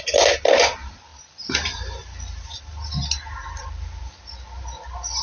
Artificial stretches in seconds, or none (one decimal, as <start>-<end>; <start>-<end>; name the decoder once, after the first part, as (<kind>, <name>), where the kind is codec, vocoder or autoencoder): none